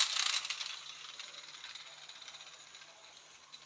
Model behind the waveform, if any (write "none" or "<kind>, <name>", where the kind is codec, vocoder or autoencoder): none